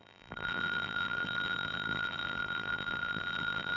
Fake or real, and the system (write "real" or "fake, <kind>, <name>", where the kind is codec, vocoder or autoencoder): fake, vocoder, BigVGAN v2